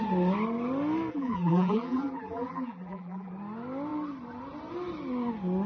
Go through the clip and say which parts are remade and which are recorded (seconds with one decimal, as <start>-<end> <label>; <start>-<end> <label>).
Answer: 0.0-1.1 recorded; 1.1-3.3 remade; 3.3-5.7 recorded